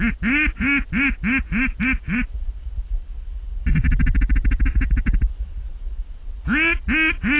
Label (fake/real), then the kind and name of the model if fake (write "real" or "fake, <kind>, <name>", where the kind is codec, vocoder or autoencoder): real